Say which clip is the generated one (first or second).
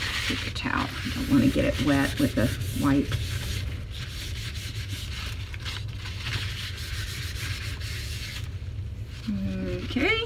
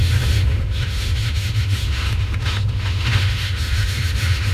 second